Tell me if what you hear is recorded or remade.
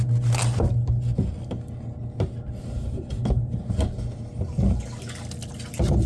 recorded